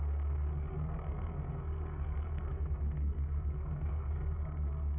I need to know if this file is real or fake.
fake